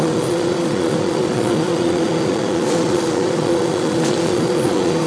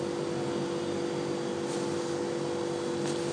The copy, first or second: first